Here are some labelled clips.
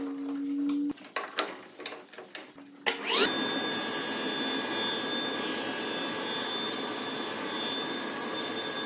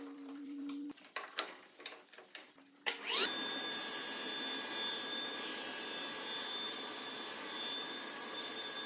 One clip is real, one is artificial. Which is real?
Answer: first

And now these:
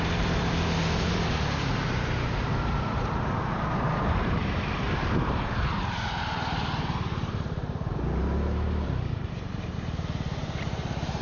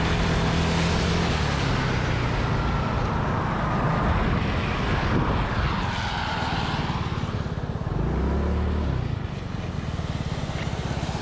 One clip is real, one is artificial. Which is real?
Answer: second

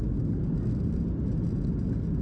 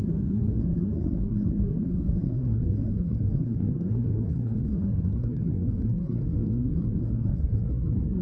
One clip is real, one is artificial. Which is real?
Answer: first